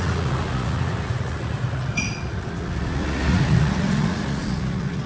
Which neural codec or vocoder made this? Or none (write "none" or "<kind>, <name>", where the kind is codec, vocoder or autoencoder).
vocoder, Vocos